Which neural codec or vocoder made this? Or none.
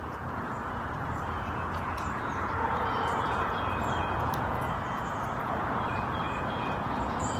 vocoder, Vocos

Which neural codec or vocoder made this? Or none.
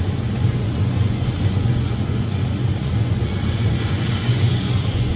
vocoder, Vocos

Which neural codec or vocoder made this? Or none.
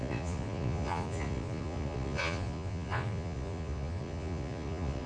vocoder, Vocos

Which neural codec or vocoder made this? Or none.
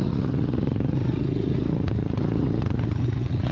vocoder, Vocos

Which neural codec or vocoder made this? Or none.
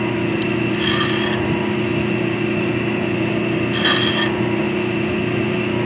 none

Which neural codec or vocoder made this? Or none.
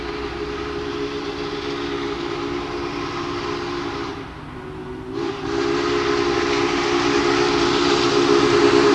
none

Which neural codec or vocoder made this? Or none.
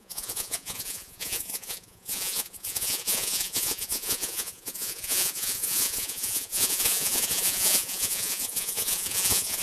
vocoder, Vocos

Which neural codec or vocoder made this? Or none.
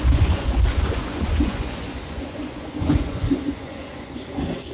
vocoder, Vocos